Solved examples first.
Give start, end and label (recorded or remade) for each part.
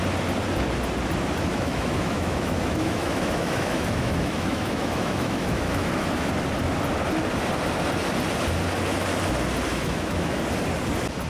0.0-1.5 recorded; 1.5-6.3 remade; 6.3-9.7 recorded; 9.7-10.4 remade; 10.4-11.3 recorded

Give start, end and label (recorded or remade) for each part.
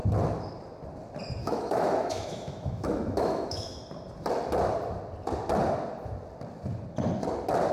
0.0-1.4 recorded; 1.4-3.8 remade; 3.8-7.7 recorded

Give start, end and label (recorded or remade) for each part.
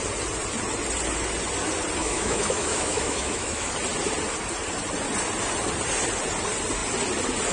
0.0-2.0 recorded; 2.0-3.7 remade; 3.7-7.5 recorded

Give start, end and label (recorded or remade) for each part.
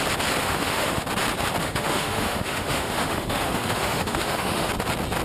0.0-0.4 recorded; 0.4-1.0 remade; 1.0-1.6 recorded; 1.6-4.7 remade; 4.7-5.2 recorded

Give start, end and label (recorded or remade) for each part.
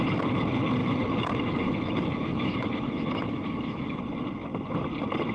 0.0-0.8 recorded; 0.8-4.0 remade; 4.0-5.3 recorded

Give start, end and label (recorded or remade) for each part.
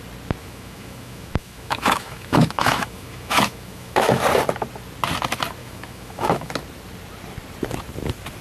0.0-0.4 recorded; 0.4-4.2 remade; 4.2-5.6 recorded; 5.6-6.5 remade; 6.5-8.4 recorded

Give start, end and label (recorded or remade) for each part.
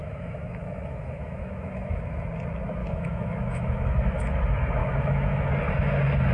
0.0-2.0 remade; 2.0-2.8 recorded; 2.8-4.3 remade; 4.3-4.8 recorded; 4.8-5.5 remade; 5.5-6.3 recorded